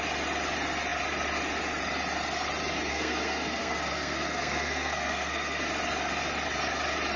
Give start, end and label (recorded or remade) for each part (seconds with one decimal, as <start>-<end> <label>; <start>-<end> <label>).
0.0-2.9 recorded; 2.9-5.6 remade; 5.6-7.2 recorded